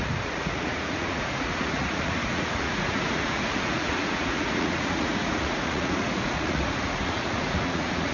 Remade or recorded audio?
remade